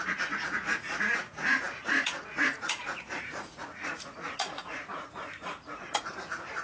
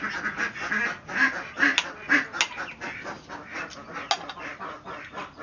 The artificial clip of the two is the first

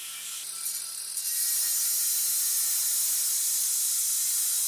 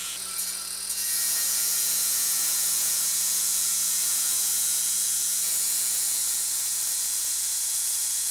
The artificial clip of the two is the second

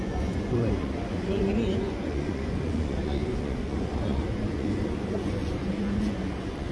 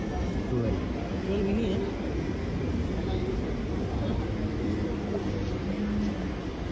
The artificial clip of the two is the first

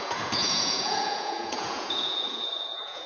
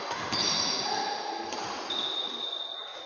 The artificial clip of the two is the first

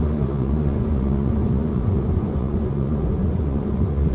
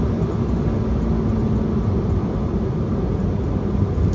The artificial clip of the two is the first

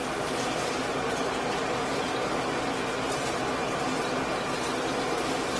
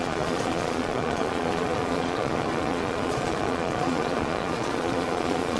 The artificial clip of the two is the second